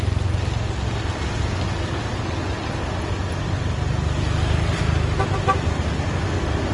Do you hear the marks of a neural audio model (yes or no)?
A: no